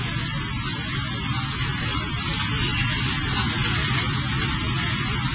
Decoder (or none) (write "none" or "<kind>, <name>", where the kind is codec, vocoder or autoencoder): none